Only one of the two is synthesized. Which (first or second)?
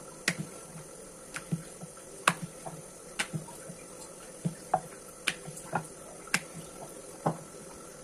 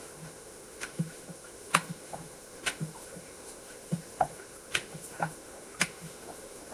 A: second